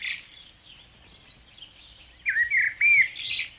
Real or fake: real